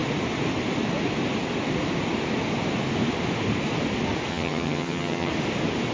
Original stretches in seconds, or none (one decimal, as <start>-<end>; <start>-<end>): 0.0-4.3; 5.3-5.9